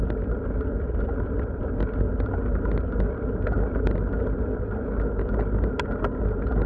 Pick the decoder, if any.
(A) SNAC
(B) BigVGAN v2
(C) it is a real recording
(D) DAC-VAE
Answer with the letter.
C